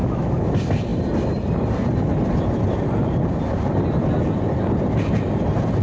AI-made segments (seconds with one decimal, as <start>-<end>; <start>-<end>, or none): 0.0-0.5